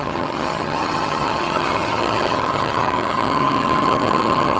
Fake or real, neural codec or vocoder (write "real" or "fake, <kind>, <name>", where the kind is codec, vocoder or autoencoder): fake, vocoder, HiFi-GAN